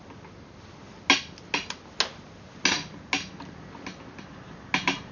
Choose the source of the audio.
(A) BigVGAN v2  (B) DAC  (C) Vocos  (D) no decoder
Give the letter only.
D